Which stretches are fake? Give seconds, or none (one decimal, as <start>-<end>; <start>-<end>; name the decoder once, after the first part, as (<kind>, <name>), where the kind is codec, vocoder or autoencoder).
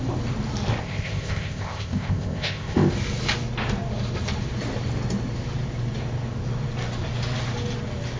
0.8-2.9 (codec, ZipCodec)